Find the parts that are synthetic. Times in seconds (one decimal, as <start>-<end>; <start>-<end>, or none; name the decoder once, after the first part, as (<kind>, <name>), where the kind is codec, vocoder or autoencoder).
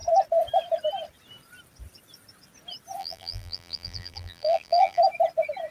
3.0-5.0 (vocoder, BigVGAN v2)